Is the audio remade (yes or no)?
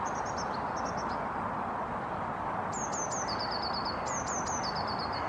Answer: no